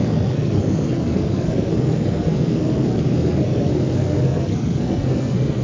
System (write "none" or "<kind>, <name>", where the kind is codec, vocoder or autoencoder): codec, SNAC